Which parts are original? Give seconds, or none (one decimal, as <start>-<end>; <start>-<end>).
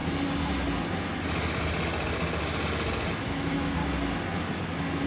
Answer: 0.0-3.1; 3.8-5.1